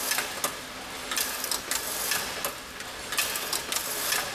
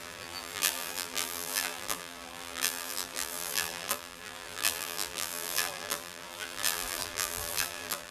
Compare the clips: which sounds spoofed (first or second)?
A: second